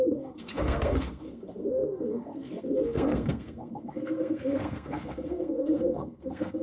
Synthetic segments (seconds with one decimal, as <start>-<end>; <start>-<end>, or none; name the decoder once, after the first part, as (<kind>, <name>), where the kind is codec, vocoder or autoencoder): 0.0-6.6 (codec, SNAC)